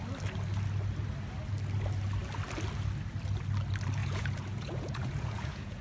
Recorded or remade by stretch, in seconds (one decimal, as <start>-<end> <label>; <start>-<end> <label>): 0.0-4.0 recorded; 4.0-5.8 remade